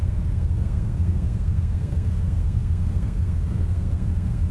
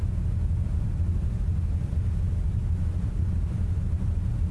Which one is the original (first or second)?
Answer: second